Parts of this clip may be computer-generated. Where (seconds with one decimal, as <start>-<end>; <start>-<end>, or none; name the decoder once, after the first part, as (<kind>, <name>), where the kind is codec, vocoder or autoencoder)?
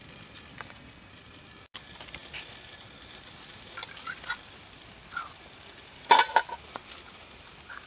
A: 0.5-1.1 (codec, DAC)